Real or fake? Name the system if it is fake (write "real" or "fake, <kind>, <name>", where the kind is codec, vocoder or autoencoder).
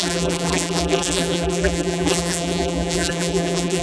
fake, vocoder, BigVGAN v2